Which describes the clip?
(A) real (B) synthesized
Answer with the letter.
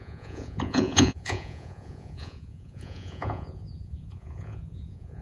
B